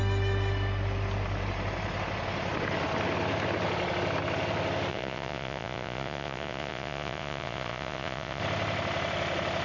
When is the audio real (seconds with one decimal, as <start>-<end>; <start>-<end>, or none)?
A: 0.0-4.9; 8.4-9.6